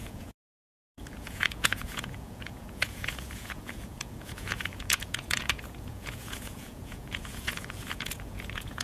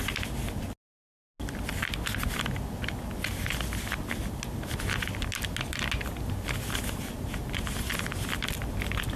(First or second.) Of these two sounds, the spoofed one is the first